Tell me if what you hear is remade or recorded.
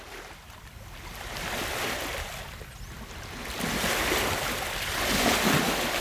recorded